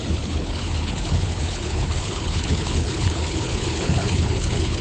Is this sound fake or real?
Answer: fake